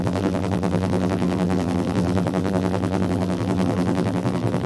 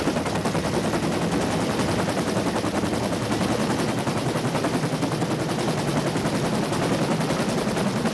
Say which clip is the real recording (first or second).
second